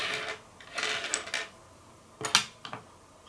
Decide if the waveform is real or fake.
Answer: real